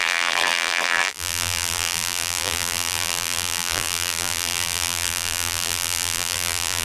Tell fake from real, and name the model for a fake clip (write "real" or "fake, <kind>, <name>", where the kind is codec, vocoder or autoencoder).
fake, vocoder, BigVGAN v2